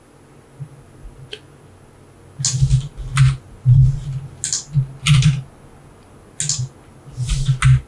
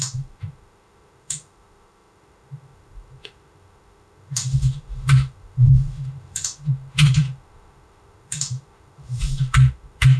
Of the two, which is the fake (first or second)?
second